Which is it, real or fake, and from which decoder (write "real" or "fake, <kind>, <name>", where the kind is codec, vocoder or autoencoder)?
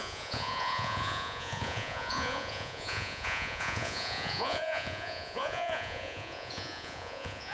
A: fake, vocoder, Vocos